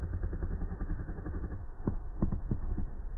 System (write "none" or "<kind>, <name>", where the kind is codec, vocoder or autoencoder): autoencoder, DAC-VAE